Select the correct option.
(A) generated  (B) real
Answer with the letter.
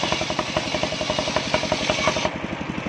B